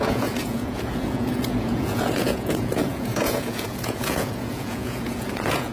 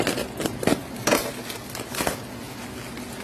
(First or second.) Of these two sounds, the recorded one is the second